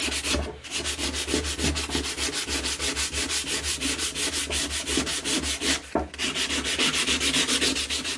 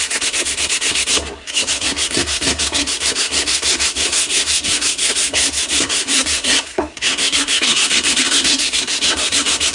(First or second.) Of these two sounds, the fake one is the second